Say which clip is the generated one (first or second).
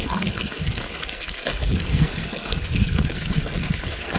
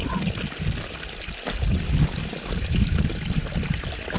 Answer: first